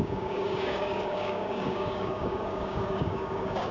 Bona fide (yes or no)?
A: no